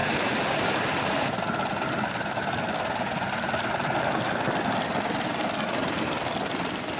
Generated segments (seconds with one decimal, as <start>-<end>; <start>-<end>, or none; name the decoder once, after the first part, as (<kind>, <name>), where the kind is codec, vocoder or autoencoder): 0.0-1.4 (vocoder, BigVGAN v2)